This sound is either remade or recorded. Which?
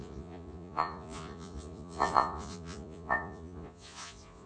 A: remade